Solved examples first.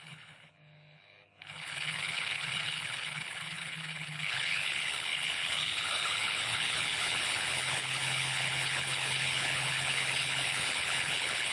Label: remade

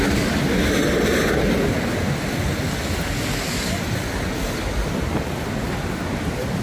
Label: recorded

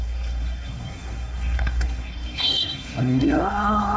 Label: remade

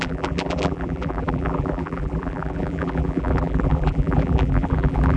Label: remade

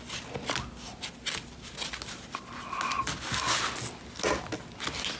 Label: recorded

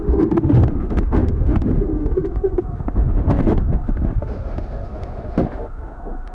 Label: remade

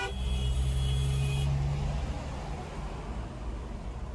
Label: recorded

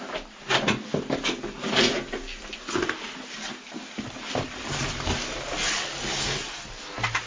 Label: recorded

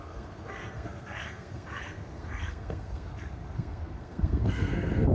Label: remade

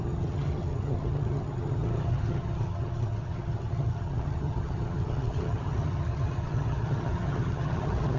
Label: remade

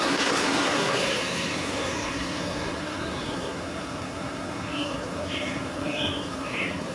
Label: remade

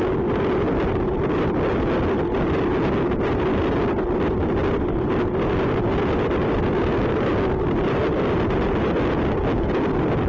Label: recorded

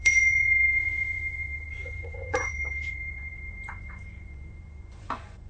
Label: remade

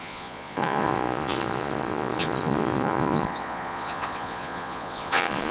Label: remade